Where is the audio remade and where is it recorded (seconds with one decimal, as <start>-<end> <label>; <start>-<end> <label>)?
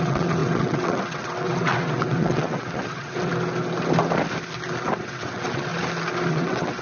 0.0-3.3 remade; 3.3-5.0 recorded; 5.0-5.7 remade; 5.7-6.3 recorded; 6.3-6.8 remade